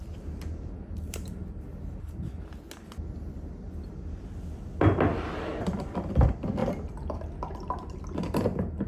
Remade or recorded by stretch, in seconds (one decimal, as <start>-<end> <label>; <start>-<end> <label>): 0.0-8.9 recorded